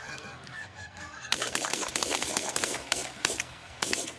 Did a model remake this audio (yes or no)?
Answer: yes